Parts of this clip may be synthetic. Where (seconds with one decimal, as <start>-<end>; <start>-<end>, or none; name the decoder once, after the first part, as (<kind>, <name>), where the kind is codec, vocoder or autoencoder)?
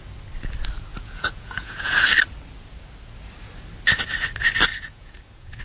0.9-2.0 (vocoder, Vocos); 4.7-5.6